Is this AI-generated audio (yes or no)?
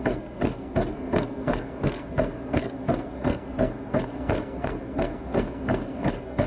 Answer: yes